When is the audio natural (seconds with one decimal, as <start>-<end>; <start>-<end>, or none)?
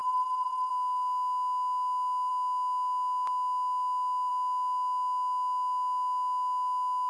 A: 0.7-7.1